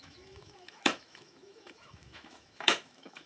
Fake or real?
fake